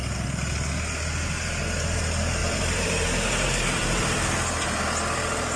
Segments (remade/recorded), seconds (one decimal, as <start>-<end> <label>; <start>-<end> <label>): 0.0-2.4 recorded; 2.4-4.8 remade; 4.8-5.6 recorded